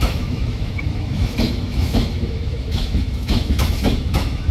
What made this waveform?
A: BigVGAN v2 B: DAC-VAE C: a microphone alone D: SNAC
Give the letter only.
B